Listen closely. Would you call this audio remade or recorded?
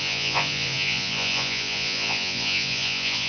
remade